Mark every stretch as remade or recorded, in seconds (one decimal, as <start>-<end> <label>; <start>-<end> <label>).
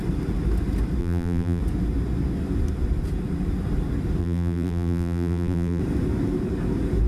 0.0-1.0 recorded; 1.0-1.6 remade; 1.6-4.2 recorded; 4.2-5.8 remade; 5.8-7.1 recorded